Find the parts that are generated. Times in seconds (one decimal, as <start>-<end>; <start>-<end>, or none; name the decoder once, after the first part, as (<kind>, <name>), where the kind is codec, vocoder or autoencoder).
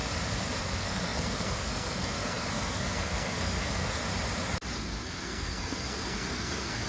0.6-4.0 (codec, SNAC); 4.7-6.9